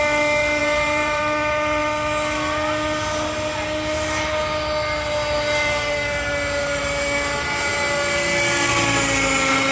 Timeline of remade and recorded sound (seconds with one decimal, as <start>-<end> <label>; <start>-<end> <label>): 0.0-0.6 recorded; 0.6-1.2 remade; 1.2-9.7 recorded